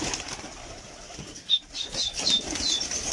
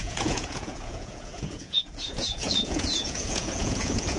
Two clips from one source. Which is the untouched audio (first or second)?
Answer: first